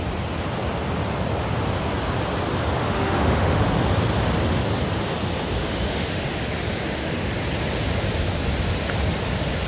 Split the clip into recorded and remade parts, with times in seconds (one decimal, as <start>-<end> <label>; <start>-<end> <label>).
0.0-2.8 recorded; 2.8-3.6 remade; 3.6-5.6 recorded; 5.6-6.3 remade; 6.3-6.8 recorded; 6.8-7.3 remade; 7.3-9.7 recorded